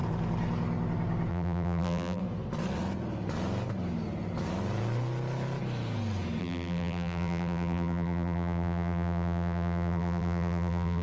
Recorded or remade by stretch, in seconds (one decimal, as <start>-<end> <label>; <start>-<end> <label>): 0.0-1.3 recorded; 1.3-2.2 remade; 2.2-6.4 recorded; 6.4-11.0 remade